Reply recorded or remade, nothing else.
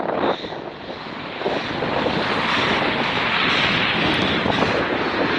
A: recorded